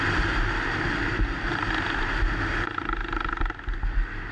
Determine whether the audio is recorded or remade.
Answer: recorded